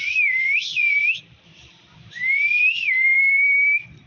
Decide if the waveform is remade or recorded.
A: remade